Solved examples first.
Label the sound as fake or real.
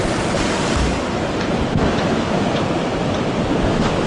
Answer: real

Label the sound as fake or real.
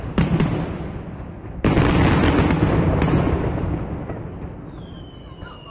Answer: real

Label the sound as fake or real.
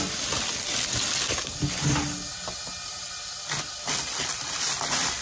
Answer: real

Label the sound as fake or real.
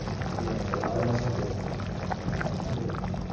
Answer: real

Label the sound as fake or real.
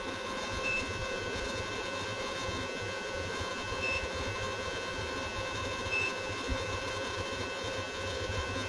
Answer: fake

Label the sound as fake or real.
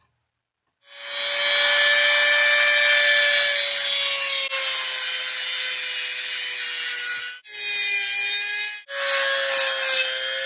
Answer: real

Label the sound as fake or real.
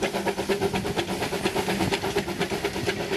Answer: real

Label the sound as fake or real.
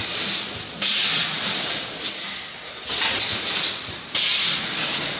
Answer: real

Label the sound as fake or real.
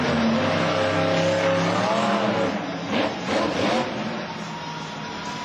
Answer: real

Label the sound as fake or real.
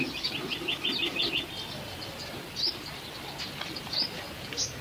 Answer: fake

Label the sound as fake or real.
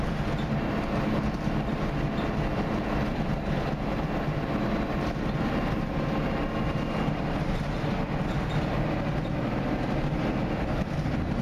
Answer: real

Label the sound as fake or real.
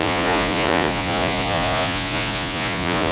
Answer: fake